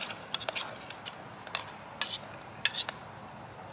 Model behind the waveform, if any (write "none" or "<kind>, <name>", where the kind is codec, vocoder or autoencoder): none